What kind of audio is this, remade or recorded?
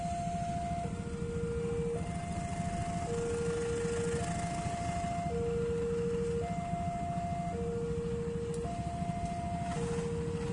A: recorded